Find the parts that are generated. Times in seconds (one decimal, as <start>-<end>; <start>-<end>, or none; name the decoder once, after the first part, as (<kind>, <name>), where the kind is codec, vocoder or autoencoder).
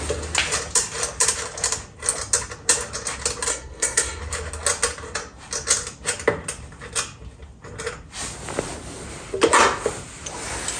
3.5-4.2 (codec, SNAC)